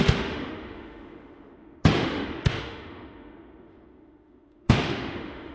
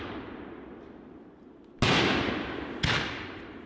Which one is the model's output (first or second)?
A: first